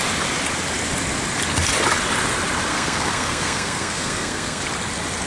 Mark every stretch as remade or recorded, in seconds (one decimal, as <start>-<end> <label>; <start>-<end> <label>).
0.0-2.7 recorded; 2.7-4.6 remade; 4.6-5.3 recorded